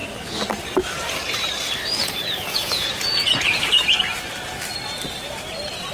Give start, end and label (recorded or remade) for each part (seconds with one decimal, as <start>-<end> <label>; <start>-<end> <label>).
0.0-2.0 recorded; 2.0-3.7 remade; 3.7-5.9 recorded